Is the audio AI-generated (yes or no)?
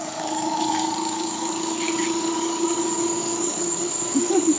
yes